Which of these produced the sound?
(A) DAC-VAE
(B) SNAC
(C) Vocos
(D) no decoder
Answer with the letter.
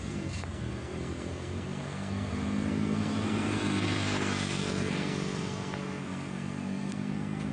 B